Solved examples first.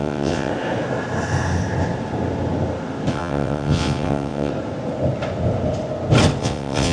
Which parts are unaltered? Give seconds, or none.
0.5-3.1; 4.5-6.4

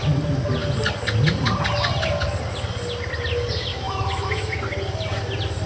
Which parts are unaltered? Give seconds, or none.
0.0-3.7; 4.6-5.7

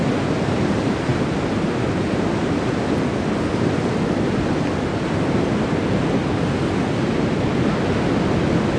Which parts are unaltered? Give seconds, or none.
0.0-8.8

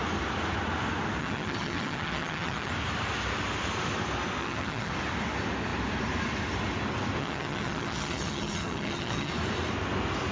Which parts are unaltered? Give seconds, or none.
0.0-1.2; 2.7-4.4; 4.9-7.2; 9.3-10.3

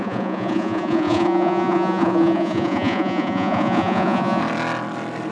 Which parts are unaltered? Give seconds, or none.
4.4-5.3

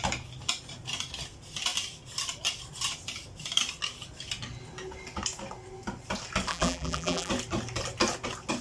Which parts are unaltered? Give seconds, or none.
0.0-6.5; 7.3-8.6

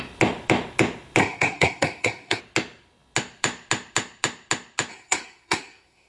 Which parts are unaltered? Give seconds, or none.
0.0-1.2; 2.4-4.9